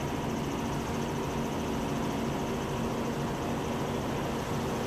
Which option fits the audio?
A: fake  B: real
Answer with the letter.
B